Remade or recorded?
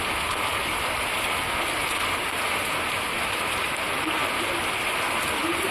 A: recorded